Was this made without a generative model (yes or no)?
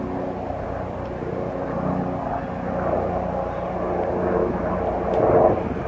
yes